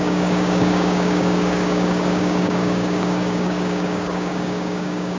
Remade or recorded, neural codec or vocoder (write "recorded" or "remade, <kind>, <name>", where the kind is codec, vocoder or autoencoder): remade, codec, DAC